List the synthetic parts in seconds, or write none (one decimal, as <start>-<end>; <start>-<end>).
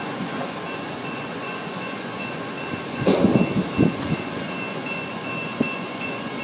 0.0-3.3; 4.0-6.4